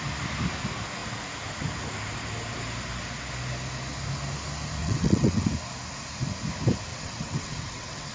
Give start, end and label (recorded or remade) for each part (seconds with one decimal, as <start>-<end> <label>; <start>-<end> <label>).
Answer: 0.0-4.8 recorded; 4.8-5.5 remade; 5.5-6.9 recorded; 6.9-8.1 remade